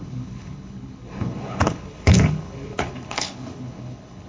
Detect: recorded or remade remade